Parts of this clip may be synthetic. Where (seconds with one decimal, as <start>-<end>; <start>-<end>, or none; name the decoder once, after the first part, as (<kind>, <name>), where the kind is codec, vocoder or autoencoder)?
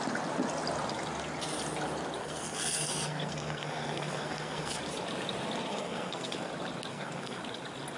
2.2-4.8 (codec, SNAC); 5.7-6.5; 6.9-7.4